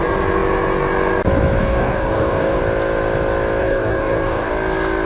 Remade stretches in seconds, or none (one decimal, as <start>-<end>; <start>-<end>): 1.6-2.6; 3.6-4.5